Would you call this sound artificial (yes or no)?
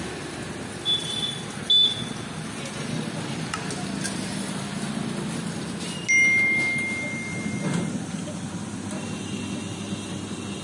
no